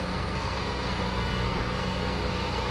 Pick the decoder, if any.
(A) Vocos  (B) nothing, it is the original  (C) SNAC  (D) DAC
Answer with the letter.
C